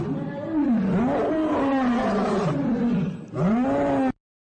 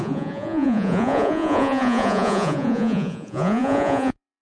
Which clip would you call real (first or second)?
first